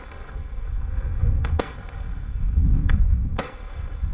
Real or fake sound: fake